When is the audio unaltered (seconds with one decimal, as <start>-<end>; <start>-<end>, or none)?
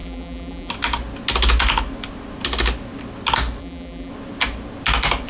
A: 0.7-3.6; 4.1-5.3